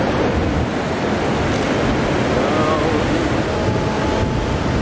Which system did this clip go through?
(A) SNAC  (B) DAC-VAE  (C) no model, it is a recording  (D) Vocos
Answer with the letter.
C